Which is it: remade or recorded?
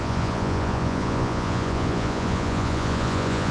remade